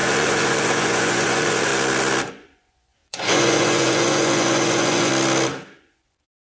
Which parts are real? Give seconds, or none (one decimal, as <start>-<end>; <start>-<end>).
1.7-2.3; 5.1-5.8